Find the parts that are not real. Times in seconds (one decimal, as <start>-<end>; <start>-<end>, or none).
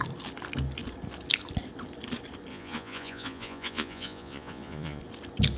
2.5-5.0